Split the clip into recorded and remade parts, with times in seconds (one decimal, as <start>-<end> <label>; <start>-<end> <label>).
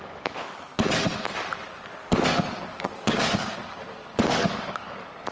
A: 0.0-0.7 remade; 0.7-2.7 recorded; 2.7-3.6 remade; 3.6-4.2 recorded; 4.2-5.3 remade